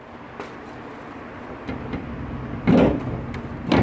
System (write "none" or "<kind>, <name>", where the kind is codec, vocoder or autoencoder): none